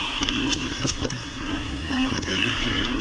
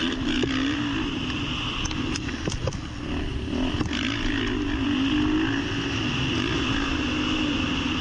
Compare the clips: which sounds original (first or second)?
second